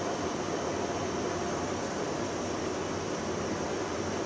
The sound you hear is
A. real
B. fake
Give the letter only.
A